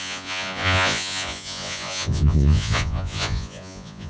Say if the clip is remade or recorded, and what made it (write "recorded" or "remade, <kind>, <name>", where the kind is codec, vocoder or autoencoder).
remade, vocoder, Vocos